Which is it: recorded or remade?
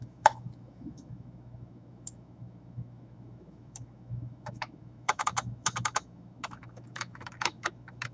remade